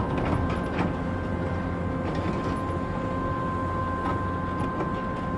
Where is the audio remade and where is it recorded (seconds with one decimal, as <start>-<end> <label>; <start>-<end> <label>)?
0.0-5.4 recorded